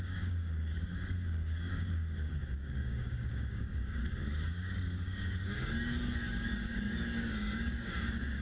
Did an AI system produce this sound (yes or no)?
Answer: yes